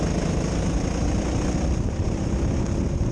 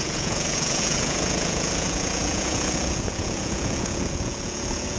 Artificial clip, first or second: second